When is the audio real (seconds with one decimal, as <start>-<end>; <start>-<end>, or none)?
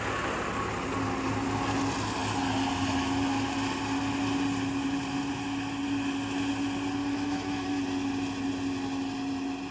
0.0-7.0; 7.8-9.7